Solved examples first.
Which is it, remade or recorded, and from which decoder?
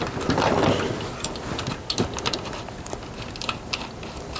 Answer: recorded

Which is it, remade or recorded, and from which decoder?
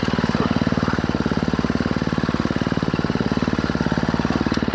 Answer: recorded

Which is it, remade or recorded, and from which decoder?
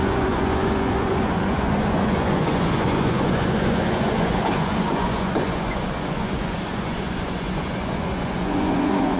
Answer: remade, vocoder, Vocos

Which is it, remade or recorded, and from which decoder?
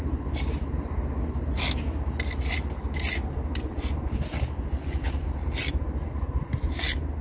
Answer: recorded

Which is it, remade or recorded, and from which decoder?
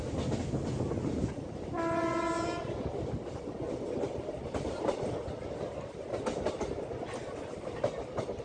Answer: recorded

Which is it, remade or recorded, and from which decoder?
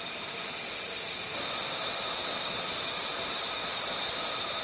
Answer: remade, vocoder, BigVGAN v2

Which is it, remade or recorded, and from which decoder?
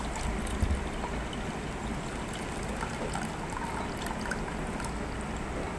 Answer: recorded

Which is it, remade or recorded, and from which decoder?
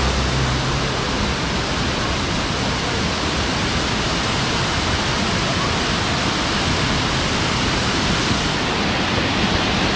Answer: recorded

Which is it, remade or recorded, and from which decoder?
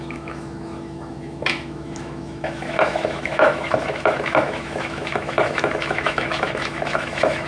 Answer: remade, autoencoder, DAC-VAE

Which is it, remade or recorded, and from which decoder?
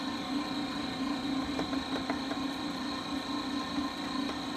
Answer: recorded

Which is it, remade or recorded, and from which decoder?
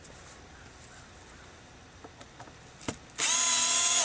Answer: recorded